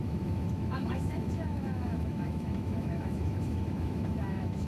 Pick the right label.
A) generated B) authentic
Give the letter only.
A